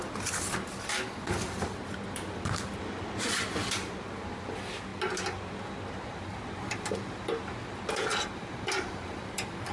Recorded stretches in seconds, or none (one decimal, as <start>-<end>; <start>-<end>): 0.0-8.1; 9.2-9.7